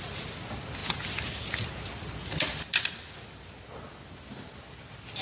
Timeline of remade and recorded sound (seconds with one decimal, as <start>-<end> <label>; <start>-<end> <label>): 0.0-5.2 recorded